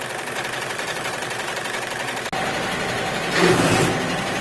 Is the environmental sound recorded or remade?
remade